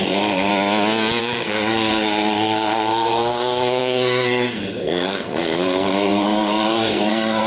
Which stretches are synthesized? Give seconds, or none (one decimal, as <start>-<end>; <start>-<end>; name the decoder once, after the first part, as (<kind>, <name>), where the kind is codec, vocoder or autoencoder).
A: 0.0-0.5 (codec, SNAC); 1.2-7.5